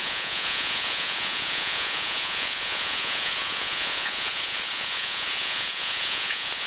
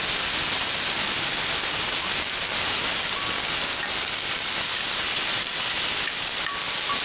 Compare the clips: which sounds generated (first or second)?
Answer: first